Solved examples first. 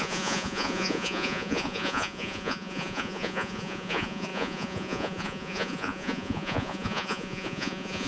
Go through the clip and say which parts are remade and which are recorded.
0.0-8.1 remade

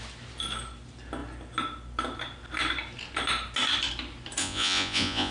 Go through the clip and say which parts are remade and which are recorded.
0.0-4.4 recorded; 4.4-5.3 remade

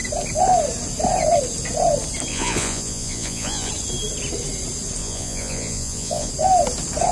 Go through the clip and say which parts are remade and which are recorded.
0.0-2.3 recorded; 2.3-3.7 remade; 3.7-5.0 recorded; 5.0-6.3 remade; 6.3-7.1 recorded

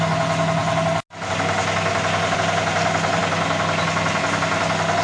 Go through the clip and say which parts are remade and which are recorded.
0.0-5.0 recorded

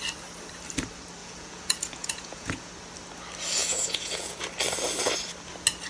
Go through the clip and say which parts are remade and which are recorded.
0.0-1.2 recorded; 1.2-2.7 remade; 2.7-3.6 recorded; 3.6-4.4 remade; 4.4-5.9 recorded

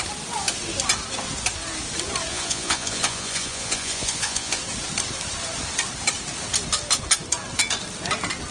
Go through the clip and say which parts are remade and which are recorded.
0.0-2.3 recorded; 2.3-4.6 remade; 4.6-8.5 recorded

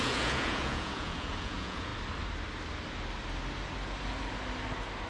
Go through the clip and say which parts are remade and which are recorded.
0.0-1.9 remade; 1.9-5.1 recorded

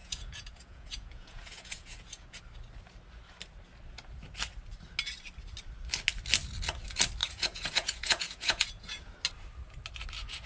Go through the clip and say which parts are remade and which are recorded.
0.0-2.4 remade; 2.4-7.2 recorded; 7.2-9.1 remade; 9.1-10.5 recorded